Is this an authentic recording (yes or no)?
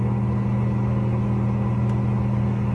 yes